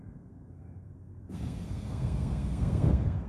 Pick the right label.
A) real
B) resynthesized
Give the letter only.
B